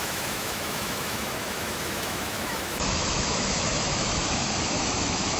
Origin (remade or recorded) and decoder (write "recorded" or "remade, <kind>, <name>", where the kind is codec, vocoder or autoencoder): remade, autoencoder, DAC-VAE